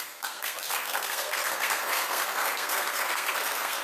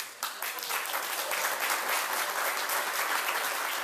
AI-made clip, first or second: first